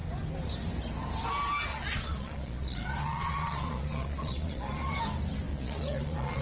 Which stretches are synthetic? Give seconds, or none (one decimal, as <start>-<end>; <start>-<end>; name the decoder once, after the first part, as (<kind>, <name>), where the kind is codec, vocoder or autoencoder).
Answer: 1.7-5.0 (vocoder, Vocos); 5.5-6.4